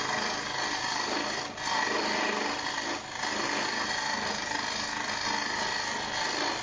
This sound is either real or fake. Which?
real